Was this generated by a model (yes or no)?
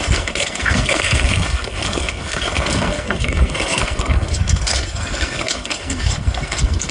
yes